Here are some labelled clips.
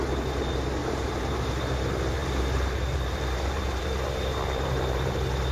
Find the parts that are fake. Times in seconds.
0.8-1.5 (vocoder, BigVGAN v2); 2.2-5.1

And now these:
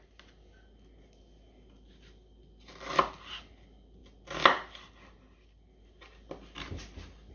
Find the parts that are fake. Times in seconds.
none

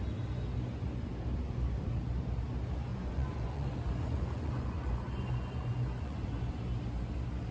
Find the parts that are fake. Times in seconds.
2.9-6.6 (vocoder, Vocos)